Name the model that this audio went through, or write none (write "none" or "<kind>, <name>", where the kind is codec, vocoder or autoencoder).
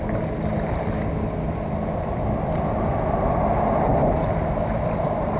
none